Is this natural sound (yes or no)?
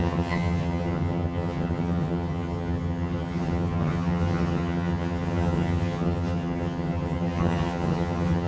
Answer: no